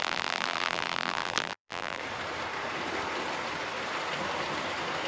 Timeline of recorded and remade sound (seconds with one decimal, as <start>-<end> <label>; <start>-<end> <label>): 0.0-2.0 remade; 2.0-5.1 recorded